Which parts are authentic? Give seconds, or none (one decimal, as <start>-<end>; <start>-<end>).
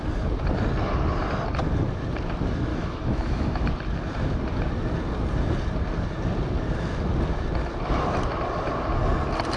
0.0-2.7; 3.7-9.6